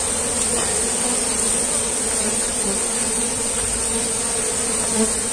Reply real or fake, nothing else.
real